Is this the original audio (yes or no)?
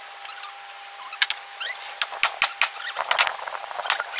yes